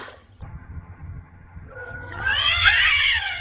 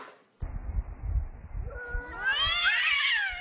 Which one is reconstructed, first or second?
first